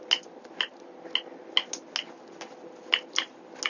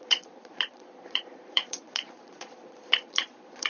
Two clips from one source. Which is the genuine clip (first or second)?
first